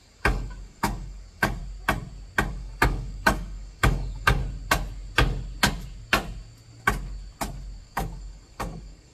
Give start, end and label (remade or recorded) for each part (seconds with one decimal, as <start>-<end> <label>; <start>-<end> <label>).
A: 0.0-1.6 remade; 1.6-2.5 recorded; 2.5-4.4 remade; 4.4-7.8 recorded; 7.8-9.1 remade